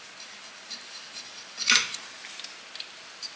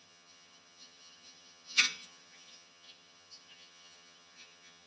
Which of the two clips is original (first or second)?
first